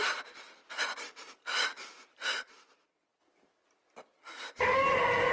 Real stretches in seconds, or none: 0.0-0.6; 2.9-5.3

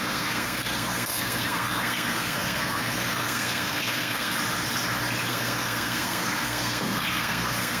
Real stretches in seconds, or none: 4.3-5.3

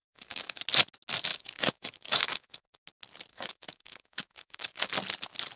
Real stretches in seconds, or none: 0.6-1.3; 2.8-3.3; 4.9-5.6

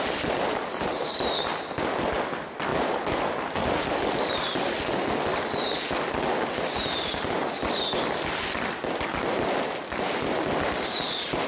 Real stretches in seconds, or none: 0.0-11.5

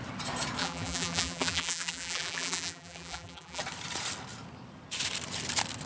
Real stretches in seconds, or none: 0.0-0.6; 3.6-5.9